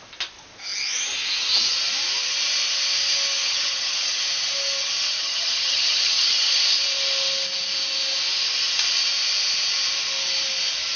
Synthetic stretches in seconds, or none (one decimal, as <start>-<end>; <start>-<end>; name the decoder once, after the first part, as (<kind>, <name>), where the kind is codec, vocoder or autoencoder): 3.4-4.2 (vocoder, HiFi-GAN); 5.2-6.6